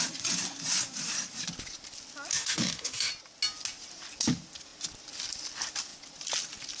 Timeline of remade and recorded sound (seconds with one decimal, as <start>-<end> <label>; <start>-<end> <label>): 0.0-2.3 recorded; 2.3-3.1 remade; 3.1-6.8 recorded